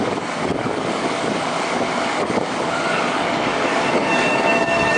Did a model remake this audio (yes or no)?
yes